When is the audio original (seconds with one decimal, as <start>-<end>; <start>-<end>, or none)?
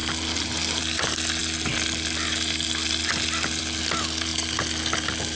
0.0-5.3